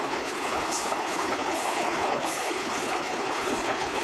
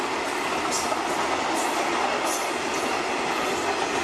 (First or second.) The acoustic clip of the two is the second